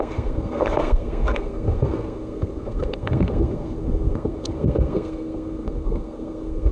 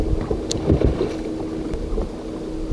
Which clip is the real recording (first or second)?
second